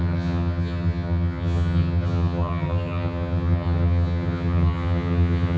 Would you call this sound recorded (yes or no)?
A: no